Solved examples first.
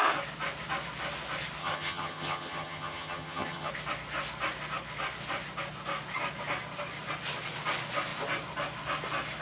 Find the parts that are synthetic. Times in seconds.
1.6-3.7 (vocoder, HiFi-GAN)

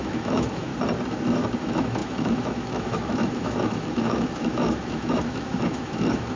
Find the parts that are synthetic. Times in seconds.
0.0-0.7 (autoencoder, DAC-VAE); 1.6-6.4

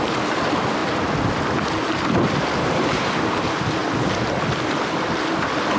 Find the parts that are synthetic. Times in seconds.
none